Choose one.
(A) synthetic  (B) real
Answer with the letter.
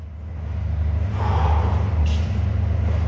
B